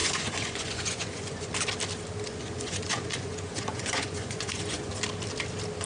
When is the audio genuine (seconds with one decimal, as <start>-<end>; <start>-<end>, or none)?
1.5-2.3; 4.9-5.9